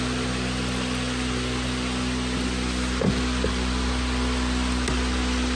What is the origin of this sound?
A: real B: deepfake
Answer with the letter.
A